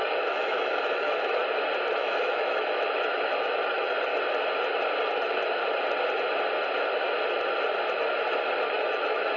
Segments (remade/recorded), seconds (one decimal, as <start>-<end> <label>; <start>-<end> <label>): 0.0-1.4 remade; 1.4-1.9 recorded; 1.9-4.1 remade; 4.1-5.0 recorded; 5.0-5.6 remade; 5.6-8.6 recorded; 8.6-9.4 remade